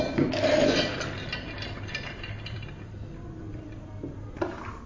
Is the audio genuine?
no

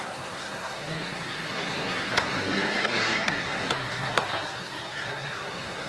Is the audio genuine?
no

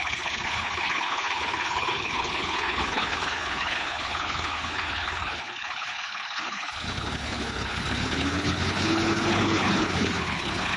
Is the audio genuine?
no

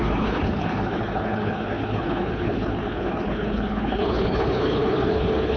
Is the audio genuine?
no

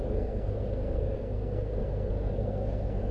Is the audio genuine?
no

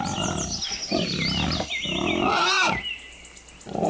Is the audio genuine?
yes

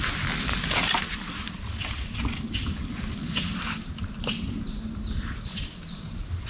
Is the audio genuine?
yes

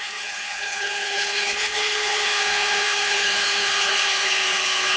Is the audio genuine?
no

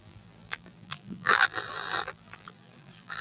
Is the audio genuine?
no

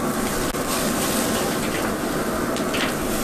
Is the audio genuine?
yes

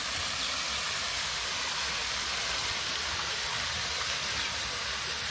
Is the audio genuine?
yes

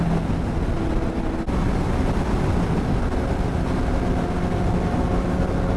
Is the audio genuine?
yes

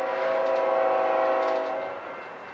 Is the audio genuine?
yes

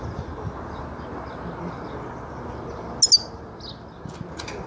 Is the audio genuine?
yes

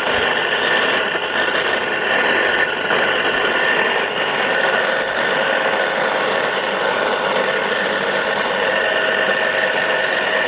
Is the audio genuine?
yes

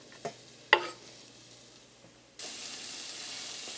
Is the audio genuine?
yes